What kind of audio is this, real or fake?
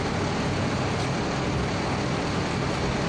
real